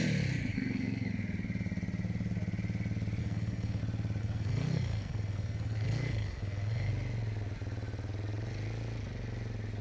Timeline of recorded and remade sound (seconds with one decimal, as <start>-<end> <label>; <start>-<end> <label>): 0.0-0.5 recorded; 0.5-1.1 remade; 1.1-3.2 recorded; 3.2-3.8 remade; 3.8-4.2 recorded; 4.2-6.9 remade; 6.9-9.8 recorded